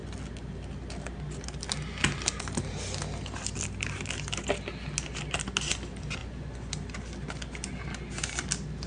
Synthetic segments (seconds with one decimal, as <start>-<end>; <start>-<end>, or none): 6.2-6.7